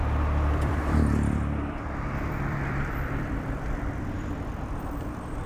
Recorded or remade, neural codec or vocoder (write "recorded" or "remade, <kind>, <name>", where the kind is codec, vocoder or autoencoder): remade, vocoder, BigVGAN v2